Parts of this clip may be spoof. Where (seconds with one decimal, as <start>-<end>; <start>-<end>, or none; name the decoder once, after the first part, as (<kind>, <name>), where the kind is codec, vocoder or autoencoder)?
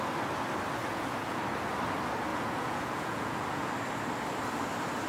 0.8-1.4 (vocoder, Vocos); 2.3-3.7